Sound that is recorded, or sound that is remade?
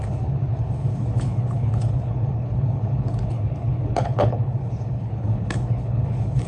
remade